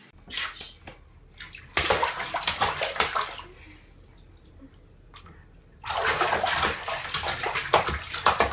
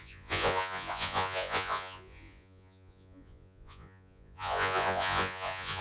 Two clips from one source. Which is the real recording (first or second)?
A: first